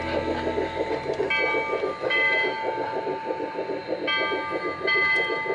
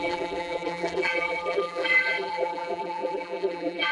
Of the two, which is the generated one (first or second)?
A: second